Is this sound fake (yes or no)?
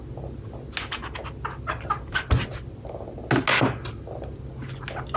no